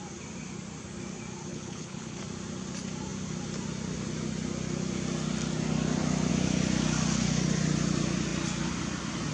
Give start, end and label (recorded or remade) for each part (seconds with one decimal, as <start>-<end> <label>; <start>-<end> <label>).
0.0-1.5 recorded; 1.5-2.2 remade; 2.2-9.3 recorded